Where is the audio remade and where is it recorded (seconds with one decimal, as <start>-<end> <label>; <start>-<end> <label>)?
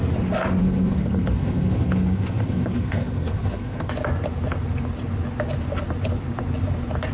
0.0-0.6 recorded; 0.6-3.9 remade; 3.9-7.1 recorded